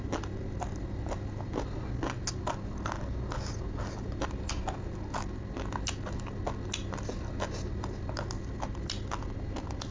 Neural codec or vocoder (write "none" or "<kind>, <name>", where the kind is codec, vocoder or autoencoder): none